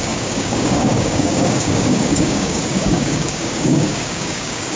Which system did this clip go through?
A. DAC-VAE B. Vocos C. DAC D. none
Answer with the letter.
C